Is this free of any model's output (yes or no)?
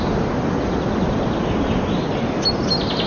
yes